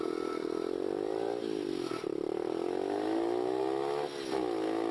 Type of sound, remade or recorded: recorded